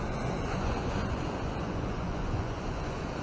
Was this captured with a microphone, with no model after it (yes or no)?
no